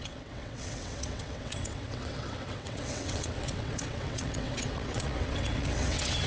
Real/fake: fake